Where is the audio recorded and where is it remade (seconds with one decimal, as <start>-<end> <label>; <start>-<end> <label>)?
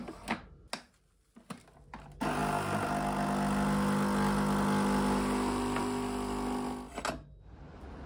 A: 0.0-8.1 recorded